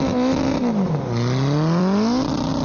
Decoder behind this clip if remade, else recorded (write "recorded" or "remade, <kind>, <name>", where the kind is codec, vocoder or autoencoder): recorded